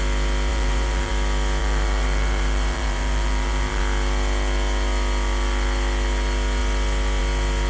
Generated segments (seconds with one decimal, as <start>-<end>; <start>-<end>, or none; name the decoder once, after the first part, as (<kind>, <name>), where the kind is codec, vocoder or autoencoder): 0.5-1.1 (vocoder, BigVGAN v2); 1.6-3.8